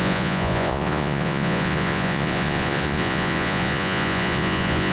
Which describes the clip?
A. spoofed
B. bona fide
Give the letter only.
A